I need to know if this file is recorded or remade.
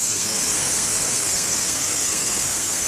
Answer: remade